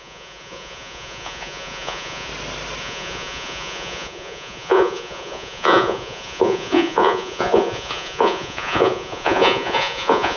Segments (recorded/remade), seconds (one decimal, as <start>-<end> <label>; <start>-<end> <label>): 0.0-2.3 remade; 2.3-2.8 recorded; 2.8-10.4 remade